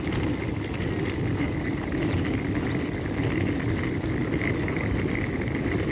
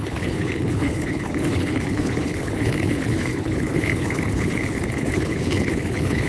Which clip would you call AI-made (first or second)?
second